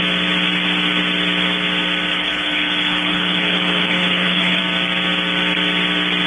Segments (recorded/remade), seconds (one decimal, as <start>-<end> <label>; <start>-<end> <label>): 0.0-2.1 recorded; 2.1-4.6 remade; 4.6-6.3 recorded